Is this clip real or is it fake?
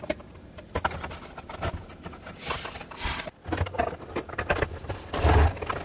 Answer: real